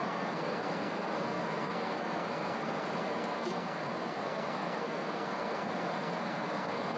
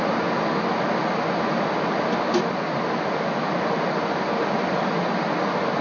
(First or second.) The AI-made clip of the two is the first